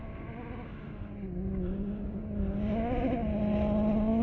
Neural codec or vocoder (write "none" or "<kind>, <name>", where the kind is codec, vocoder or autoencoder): none